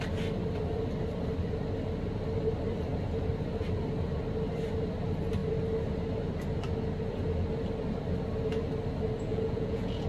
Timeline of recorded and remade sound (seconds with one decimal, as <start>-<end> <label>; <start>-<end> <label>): 0.0-9.3 recorded; 9.3-10.1 remade